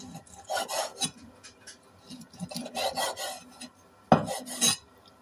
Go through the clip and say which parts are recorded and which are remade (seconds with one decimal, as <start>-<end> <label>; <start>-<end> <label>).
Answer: 0.0-5.2 recorded